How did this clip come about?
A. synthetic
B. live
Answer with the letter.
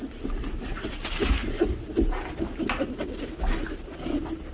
B